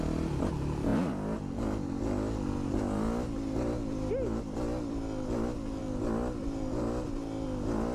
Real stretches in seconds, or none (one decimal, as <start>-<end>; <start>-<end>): 0.0-7.9